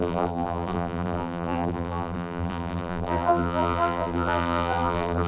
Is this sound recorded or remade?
remade